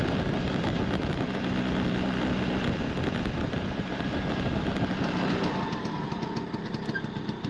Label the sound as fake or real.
fake